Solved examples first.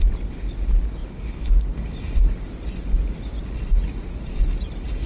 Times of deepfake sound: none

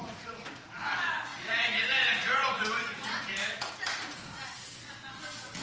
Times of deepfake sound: 0.0-0.8 (vocoder, Vocos); 1.3-4.7

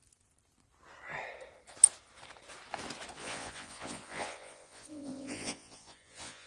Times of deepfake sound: 3.2-6.5 (vocoder, Vocos)

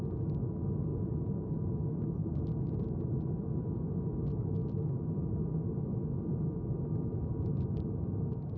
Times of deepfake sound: 0.9-1.7 (vocoder, Vocos)

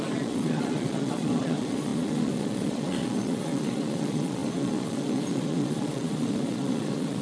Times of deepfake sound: 0.0-7.2 (vocoder, Vocos)

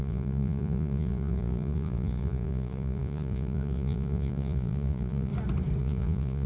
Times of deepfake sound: 0.0-5.3 (vocoder, Vocos); 5.8-6.5